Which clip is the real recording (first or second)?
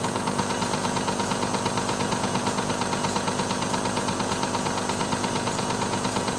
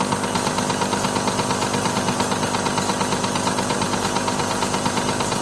second